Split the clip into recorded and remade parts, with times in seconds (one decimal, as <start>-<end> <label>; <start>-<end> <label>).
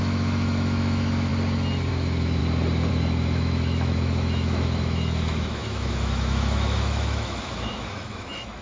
0.0-1.3 remade; 1.3-1.9 recorded; 1.9-2.4 remade; 2.4-2.9 recorded; 2.9-8.6 remade